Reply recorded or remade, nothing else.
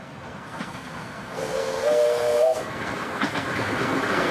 remade